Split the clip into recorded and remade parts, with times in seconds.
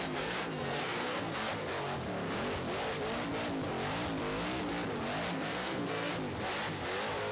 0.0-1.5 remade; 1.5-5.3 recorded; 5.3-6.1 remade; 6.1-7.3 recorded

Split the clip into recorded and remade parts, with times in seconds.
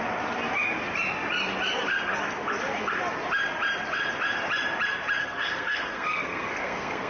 0.0-5.2 recorded; 5.2-7.1 remade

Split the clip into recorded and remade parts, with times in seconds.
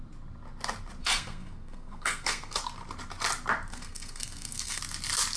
0.0-1.0 recorded; 1.0-2.6 remade; 2.6-3.7 recorded; 3.7-4.8 remade; 4.8-5.4 recorded